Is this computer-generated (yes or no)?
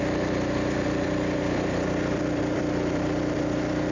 yes